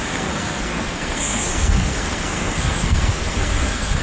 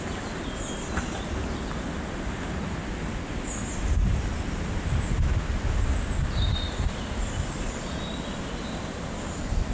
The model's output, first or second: first